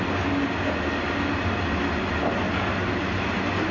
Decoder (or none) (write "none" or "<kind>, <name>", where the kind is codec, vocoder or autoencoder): none